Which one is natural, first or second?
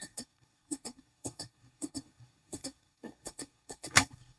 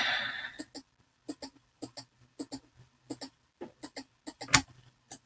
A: second